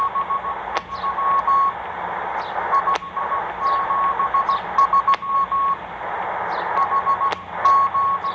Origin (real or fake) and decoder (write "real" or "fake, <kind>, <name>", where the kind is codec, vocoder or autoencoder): real